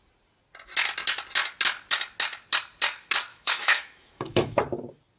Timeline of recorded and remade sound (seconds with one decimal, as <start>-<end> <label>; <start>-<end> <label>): 0.0-3.3 recorded; 3.3-4.6 remade; 4.6-5.2 recorded